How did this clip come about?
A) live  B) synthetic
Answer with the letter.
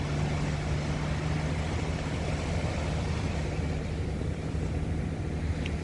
A